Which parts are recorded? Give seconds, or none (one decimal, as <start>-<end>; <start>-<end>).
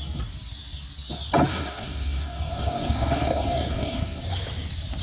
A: 0.0-1.5; 4.2-5.0